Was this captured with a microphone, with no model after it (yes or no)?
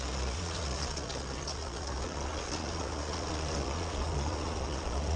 no